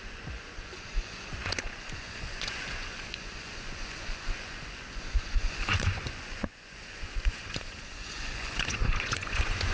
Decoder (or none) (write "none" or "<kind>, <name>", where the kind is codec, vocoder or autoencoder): vocoder, Vocos